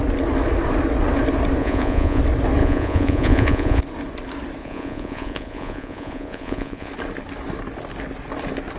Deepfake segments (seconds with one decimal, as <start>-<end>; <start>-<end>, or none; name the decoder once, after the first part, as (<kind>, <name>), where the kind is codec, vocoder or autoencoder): 1.6-2.2 (vocoder, Vocos); 2.6-3.8; 4.6-6.9